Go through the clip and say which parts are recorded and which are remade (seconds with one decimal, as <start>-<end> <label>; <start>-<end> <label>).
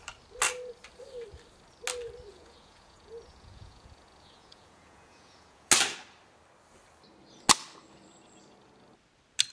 0.0-2.3 recorded; 2.3-5.7 remade; 5.7-9.5 recorded